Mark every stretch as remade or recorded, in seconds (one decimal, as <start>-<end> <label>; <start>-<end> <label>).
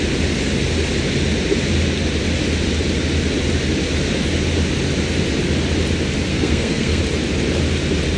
0.0-6.3 recorded; 6.3-7.0 remade; 7.0-8.2 recorded